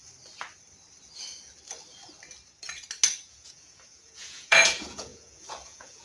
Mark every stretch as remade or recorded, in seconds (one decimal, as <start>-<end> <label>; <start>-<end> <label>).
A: 0.0-3.2 recorded; 3.2-6.0 remade

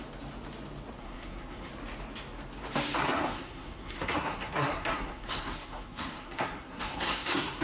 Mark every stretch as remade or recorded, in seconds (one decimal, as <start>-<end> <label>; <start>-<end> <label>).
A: 0.0-1.0 recorded; 1.0-1.7 remade; 1.7-3.0 recorded; 3.0-7.6 remade

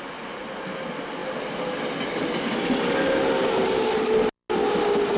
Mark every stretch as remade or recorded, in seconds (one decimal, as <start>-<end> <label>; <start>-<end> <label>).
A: 0.0-5.2 recorded

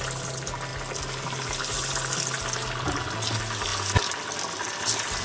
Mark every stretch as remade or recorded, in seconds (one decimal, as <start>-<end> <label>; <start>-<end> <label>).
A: 0.0-5.2 recorded

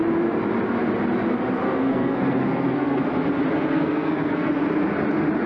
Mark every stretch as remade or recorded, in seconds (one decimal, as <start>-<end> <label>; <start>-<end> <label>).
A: 0.0-1.6 recorded; 1.6-3.0 remade; 3.0-3.7 recorded; 3.7-4.5 remade; 4.5-5.5 recorded

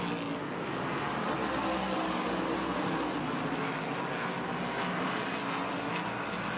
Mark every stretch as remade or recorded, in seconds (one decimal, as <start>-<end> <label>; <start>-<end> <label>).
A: 0.0-6.6 recorded

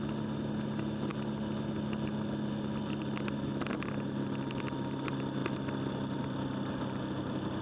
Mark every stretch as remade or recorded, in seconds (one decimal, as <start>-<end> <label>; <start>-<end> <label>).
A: 0.0-7.6 recorded